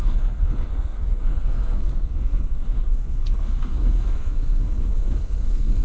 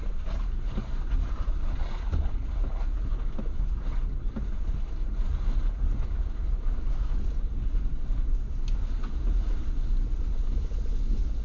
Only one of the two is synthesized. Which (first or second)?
first